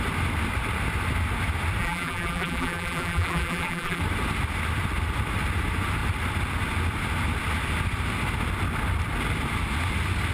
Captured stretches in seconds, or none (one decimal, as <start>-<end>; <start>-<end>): 0.0-1.8; 4.0-10.3